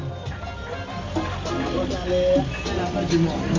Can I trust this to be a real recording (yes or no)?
yes